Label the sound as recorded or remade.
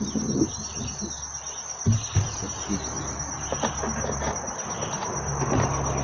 recorded